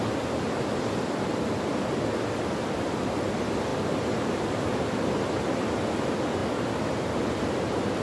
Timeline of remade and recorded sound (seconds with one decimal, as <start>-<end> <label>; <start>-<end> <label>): 0.0-3.7 recorded; 3.7-4.9 remade; 4.9-8.0 recorded